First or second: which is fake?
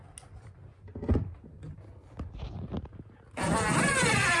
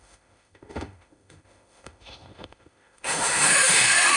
second